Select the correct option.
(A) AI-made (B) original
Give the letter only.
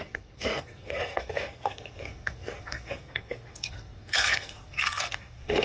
A